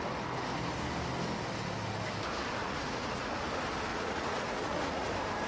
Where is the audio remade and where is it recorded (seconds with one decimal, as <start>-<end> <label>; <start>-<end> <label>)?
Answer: 0.0-2.6 recorded; 2.6-3.3 remade; 3.3-3.9 recorded; 3.9-5.1 remade; 5.1-5.5 recorded